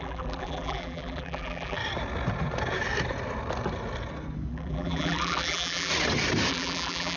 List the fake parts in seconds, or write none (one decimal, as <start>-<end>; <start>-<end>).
0.0-1.8; 4.5-5.9; 6.5-7.2